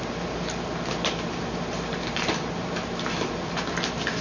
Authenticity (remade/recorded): recorded